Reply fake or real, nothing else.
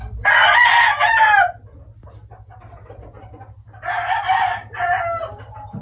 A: real